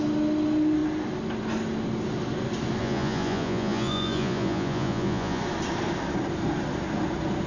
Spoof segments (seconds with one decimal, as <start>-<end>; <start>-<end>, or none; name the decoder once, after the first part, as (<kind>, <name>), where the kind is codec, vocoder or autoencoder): 2.8-5.4 (vocoder, Vocos)